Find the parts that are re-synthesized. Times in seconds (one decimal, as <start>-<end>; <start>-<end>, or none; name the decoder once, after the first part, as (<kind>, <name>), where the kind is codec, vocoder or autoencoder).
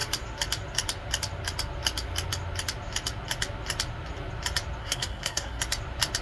4.8-5.6 (codec, SNAC)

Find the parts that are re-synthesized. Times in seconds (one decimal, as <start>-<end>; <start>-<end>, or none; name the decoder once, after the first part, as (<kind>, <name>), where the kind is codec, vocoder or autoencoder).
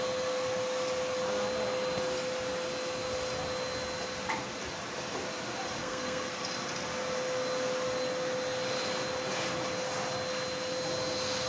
5.8-6.4 (codec, SNAC)